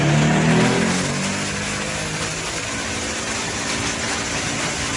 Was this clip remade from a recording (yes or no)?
no